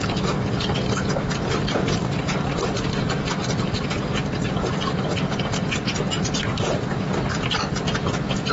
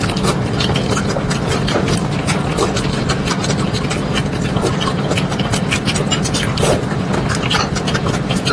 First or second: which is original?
first